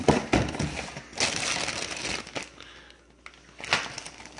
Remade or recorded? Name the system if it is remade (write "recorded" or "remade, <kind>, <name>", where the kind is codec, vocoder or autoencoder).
recorded